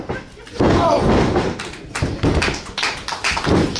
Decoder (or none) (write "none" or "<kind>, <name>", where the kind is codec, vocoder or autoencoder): none